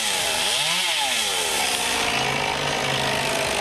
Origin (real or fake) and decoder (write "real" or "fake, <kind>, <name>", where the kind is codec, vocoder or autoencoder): real